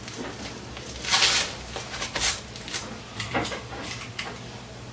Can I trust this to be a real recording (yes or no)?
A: yes